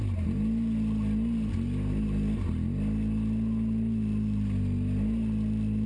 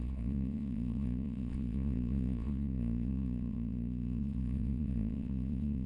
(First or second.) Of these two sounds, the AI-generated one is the second